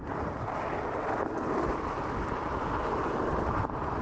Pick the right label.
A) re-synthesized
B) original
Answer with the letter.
B